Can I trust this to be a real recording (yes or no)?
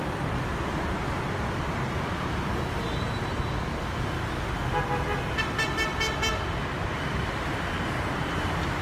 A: yes